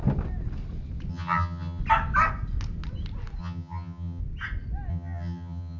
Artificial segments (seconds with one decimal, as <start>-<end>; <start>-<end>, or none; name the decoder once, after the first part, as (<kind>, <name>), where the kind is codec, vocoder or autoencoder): 1.1-1.8 (vocoder, HiFi-GAN); 3.4-4.2; 4.9-5.8